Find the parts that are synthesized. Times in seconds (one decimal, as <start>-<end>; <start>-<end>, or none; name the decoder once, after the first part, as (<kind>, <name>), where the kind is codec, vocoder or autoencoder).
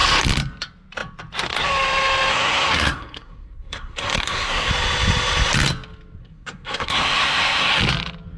2.3-4.7 (codec, SNAC); 6.2-7.8